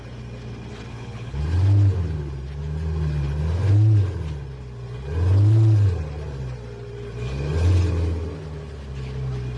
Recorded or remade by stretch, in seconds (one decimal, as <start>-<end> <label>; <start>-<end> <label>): 0.0-0.9 recorded; 0.9-1.4 remade; 1.4-9.6 recorded